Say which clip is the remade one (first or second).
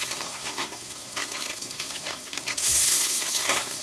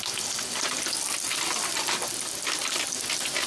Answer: first